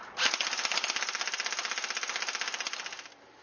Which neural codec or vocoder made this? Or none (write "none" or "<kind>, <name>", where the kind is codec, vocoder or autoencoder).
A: none